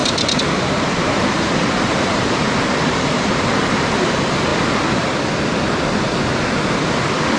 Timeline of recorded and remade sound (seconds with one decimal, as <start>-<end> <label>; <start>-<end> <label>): 0.0-4.1 remade; 4.1-7.4 recorded